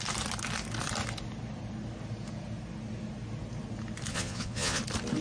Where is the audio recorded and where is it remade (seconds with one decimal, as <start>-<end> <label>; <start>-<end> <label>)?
0.0-4.1 recorded; 4.1-4.8 remade; 4.8-5.2 recorded